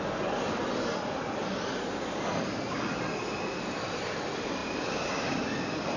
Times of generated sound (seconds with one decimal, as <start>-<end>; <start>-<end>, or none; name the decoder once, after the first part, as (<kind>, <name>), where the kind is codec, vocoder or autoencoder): none